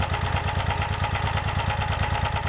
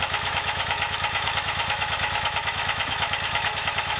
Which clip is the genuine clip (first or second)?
first